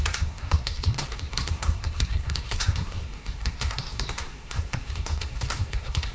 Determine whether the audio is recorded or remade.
remade